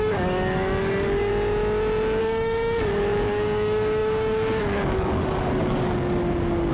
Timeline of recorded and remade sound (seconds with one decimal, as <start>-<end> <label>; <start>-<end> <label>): 0.0-1.3 remade; 1.3-2.2 recorded; 2.2-6.7 remade